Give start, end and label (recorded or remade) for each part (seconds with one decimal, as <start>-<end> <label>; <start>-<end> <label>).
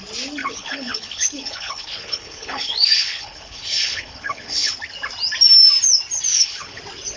0.0-0.4 recorded; 0.4-4.7 remade; 4.7-6.3 recorded; 6.3-6.8 remade; 6.8-7.2 recorded